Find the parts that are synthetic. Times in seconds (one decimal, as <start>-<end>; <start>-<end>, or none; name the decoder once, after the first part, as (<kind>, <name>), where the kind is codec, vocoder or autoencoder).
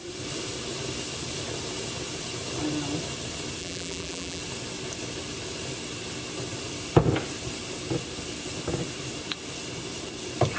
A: 3.6-4.4 (vocoder, BigVGAN v2)